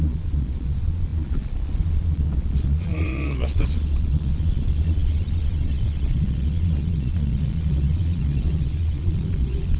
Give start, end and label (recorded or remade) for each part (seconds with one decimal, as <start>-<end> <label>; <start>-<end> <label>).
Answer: 0.0-9.8 remade